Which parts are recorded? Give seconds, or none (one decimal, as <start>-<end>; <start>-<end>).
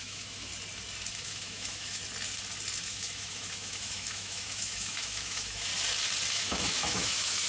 0.5-1.1; 2.0-2.8; 5.7-6.3